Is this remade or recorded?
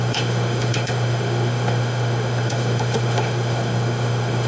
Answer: remade